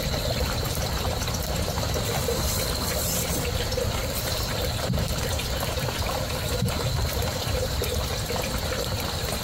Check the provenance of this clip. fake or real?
fake